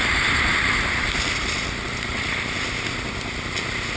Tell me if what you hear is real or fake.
real